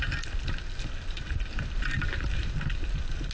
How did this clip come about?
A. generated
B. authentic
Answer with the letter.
B